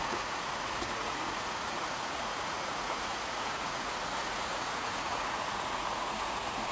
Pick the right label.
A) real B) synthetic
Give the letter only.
B